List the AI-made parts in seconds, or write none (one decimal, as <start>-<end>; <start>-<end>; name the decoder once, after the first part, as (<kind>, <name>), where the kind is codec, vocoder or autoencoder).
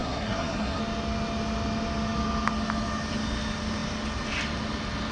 0.0-0.8 (codec, SNAC)